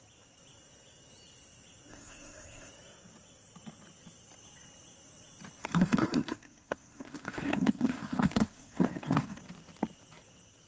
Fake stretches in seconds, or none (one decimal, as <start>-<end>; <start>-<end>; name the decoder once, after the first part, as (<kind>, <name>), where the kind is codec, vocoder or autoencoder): 1.9-2.7 (codec, SNAC); 5.6-9.4